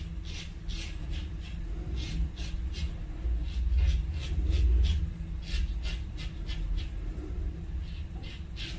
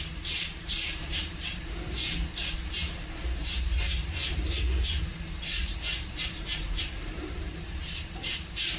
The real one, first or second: first